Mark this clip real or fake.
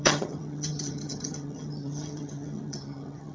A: fake